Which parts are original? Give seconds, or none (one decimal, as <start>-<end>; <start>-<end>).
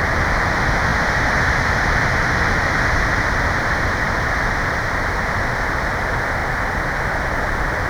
0.0-7.9